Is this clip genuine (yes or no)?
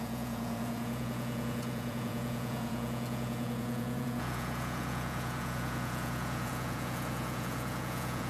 no